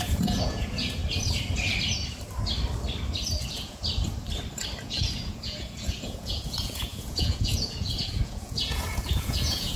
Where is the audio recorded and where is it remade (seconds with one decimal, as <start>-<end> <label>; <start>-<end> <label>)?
0.0-1.0 remade; 1.0-3.4 recorded; 3.4-3.8 remade; 3.8-4.8 recorded; 4.8-9.8 remade